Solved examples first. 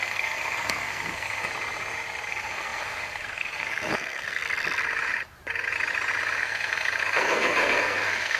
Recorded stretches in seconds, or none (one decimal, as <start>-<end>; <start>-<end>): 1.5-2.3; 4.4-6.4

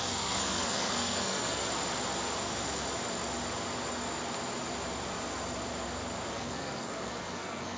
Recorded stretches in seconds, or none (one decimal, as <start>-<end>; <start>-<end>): 1.6-6.3

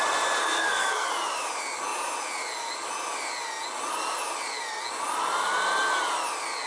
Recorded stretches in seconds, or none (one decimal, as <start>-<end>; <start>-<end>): 0.0-0.4; 1.1-6.7

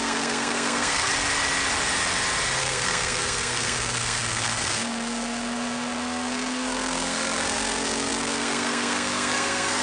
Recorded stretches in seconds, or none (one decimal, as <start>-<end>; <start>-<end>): 1.1-2.6

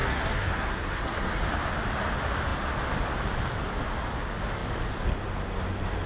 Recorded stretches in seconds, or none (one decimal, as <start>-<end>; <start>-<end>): 1.4-6.1

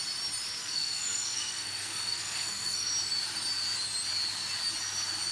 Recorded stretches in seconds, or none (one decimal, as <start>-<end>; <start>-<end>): 0.0-0.6; 2.9-5.3

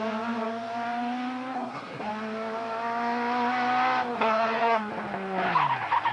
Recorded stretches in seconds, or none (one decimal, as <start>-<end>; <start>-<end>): 0.0-1.5; 2.1-4.1; 4.9-6.1